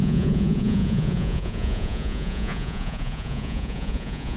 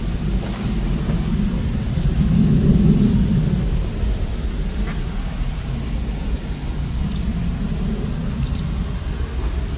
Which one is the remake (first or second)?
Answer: first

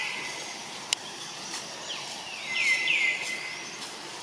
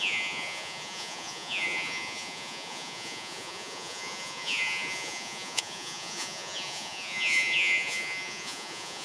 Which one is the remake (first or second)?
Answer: second